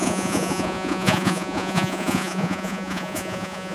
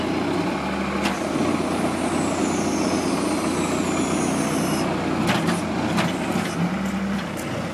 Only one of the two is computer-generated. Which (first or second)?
first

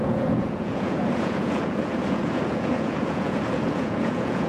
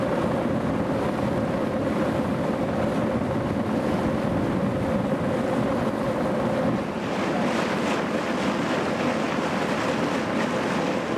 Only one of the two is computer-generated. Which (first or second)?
first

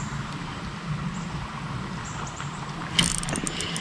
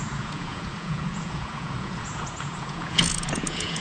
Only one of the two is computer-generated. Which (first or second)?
second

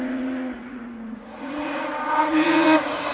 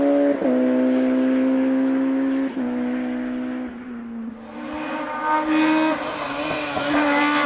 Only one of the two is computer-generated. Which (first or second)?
first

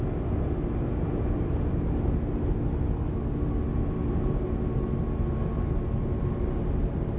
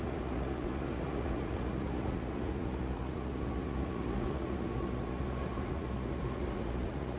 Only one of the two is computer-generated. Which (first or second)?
second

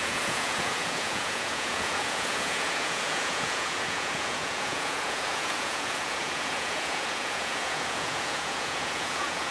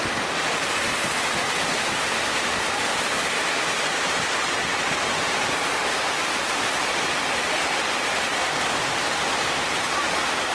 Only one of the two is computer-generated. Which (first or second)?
first